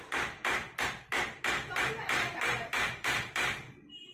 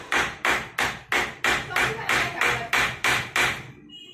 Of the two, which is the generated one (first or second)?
first